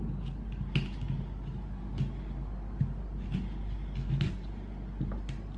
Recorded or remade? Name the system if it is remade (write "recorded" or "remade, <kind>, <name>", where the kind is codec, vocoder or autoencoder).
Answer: recorded